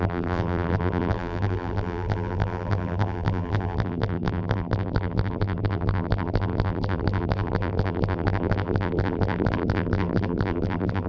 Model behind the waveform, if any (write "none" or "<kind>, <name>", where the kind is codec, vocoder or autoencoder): vocoder, BigVGAN v2